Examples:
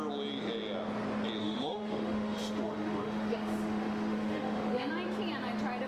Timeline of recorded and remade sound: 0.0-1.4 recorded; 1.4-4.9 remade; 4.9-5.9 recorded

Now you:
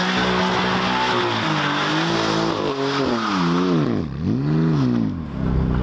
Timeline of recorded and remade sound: 0.0-5.8 recorded

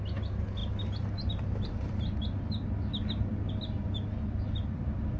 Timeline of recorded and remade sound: 0.0-5.2 recorded

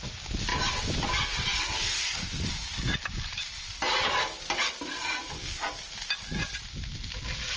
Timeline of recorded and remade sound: 0.0-7.6 recorded

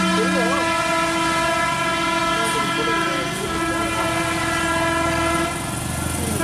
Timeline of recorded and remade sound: 0.0-6.4 recorded

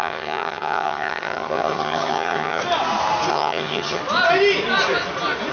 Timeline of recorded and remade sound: 0.0-2.6 remade; 2.6-3.3 recorded; 3.3-4.0 remade; 4.0-5.5 recorded

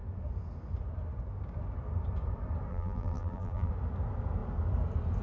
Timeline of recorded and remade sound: 0.0-2.7 recorded; 2.7-3.7 remade; 3.7-5.2 recorded